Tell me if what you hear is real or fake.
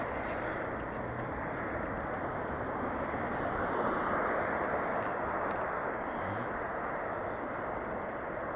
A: real